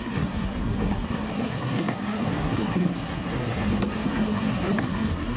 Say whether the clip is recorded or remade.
remade